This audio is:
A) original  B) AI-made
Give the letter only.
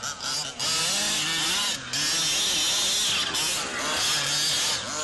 A